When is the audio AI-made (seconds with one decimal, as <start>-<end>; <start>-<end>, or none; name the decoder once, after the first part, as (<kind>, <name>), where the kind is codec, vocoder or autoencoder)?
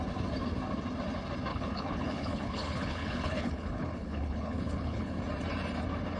1.5-5.2 (codec, HILCodec)